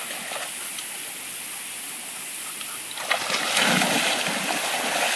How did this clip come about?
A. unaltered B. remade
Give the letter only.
A